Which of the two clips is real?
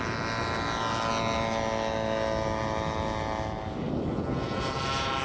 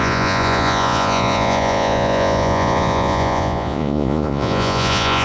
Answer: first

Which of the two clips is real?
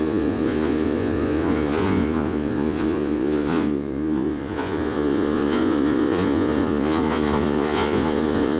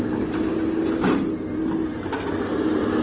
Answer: second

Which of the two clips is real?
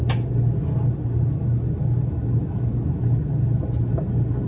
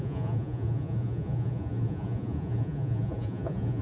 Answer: first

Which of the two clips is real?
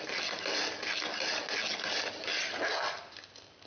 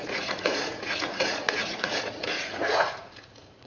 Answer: first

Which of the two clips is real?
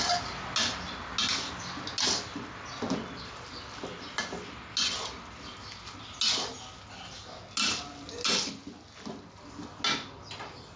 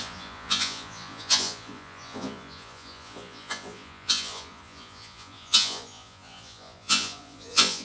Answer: first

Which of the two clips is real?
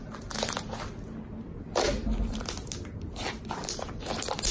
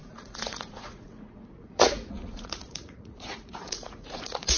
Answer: first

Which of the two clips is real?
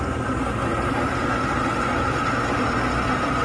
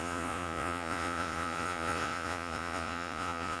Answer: first